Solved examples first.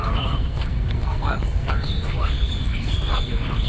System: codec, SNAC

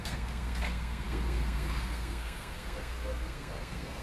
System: codec, SNAC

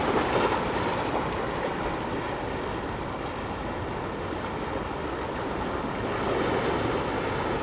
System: none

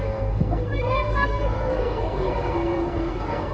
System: codec, SNAC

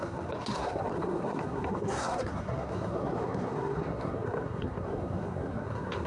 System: codec, SNAC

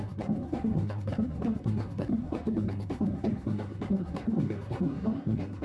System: codec, SNAC